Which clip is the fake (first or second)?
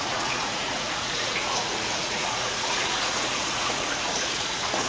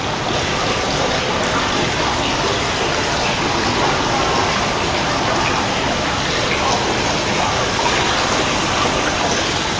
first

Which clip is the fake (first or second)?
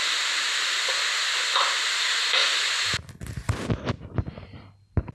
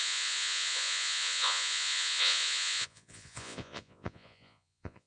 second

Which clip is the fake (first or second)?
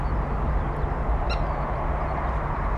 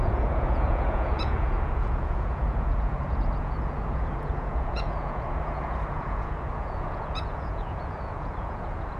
second